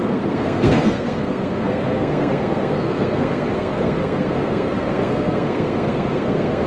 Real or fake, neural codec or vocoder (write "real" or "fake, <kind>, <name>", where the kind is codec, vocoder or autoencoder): fake, codec, SNAC